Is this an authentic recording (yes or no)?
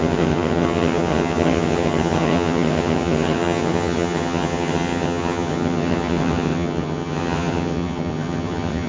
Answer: no